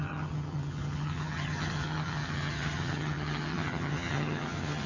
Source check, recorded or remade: remade